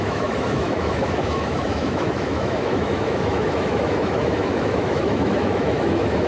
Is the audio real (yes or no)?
no